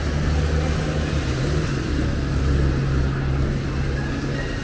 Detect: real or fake real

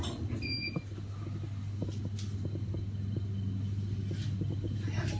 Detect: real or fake real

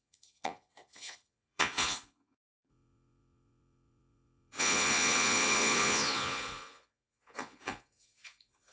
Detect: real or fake fake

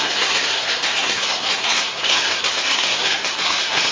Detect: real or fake fake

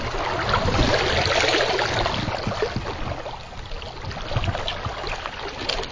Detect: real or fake real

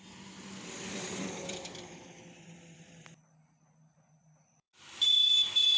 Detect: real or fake fake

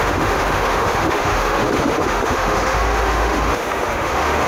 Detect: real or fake fake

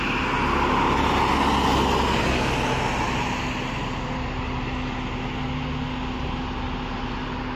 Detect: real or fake real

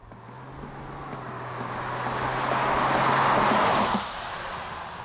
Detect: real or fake real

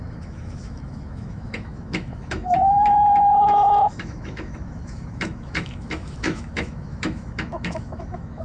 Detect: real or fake fake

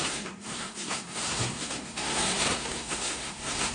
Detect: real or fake fake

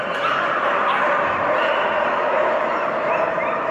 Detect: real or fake real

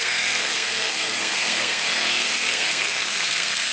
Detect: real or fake fake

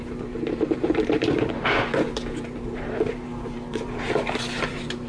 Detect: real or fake fake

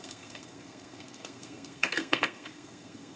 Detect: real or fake fake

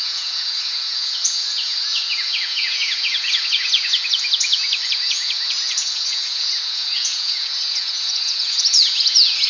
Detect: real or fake fake